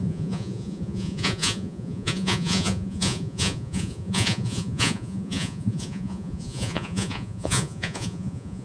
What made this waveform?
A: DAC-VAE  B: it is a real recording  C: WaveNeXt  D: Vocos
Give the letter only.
D